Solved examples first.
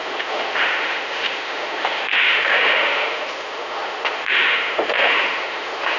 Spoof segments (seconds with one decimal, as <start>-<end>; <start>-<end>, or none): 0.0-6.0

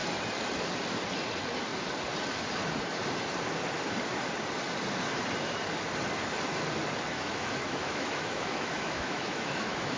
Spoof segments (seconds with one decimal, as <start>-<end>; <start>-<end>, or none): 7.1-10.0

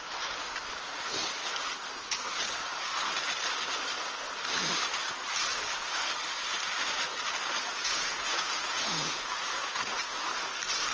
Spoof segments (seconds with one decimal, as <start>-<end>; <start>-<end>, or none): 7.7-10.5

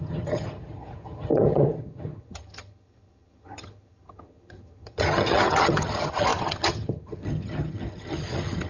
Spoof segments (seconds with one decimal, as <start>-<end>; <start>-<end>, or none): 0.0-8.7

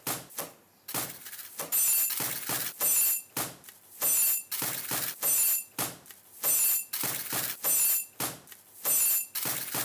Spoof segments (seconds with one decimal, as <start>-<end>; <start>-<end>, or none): none